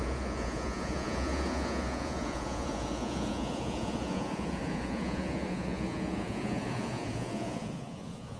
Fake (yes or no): yes